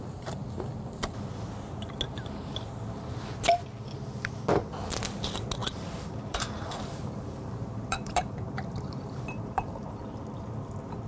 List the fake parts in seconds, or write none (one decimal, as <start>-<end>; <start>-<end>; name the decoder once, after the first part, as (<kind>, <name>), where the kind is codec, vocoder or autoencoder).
5.6-10.0 (vocoder, BigVGAN v2)